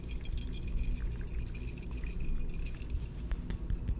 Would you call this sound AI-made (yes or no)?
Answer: no